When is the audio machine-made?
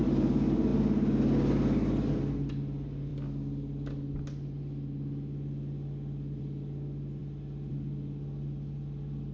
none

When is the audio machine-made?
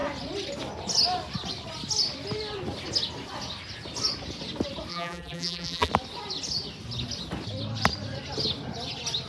4.9-5.9 (vocoder, BigVGAN v2)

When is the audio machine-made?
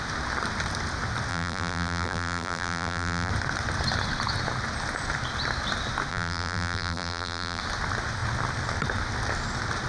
1.3-3.3 (vocoder, BigVGAN v2); 6.1-7.6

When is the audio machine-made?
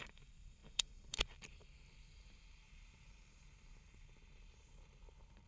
0.0-5.5 (vocoder, BigVGAN v2)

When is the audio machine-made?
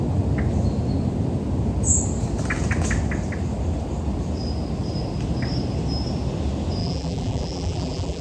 6.8-8.2 (vocoder, BigVGAN v2)